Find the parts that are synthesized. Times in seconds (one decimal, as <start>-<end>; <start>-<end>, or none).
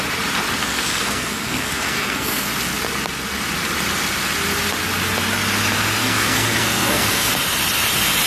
0.6-2.5; 6.0-7.3